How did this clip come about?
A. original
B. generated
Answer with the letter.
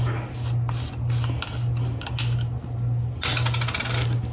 A